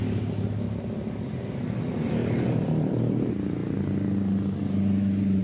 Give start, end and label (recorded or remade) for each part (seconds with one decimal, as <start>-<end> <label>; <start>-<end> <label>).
0.0-2.2 recorded; 2.2-3.0 remade; 3.0-5.4 recorded